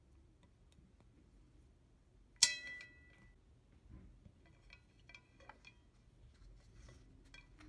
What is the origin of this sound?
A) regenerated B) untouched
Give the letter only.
B